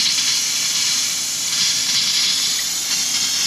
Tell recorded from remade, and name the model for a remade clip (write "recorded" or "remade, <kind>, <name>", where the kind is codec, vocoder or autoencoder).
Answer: recorded